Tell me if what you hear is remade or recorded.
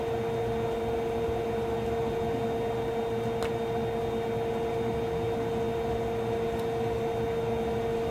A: recorded